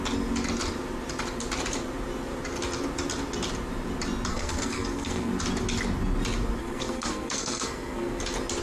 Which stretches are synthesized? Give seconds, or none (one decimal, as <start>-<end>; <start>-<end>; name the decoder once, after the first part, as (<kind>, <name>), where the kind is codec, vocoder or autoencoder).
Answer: 4.3-5.3 (codec, SNAC); 6.6-8.2